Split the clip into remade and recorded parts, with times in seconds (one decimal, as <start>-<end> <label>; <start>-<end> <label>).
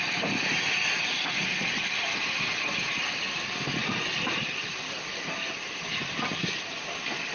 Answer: 0.0-7.3 remade